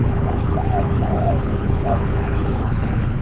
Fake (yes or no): yes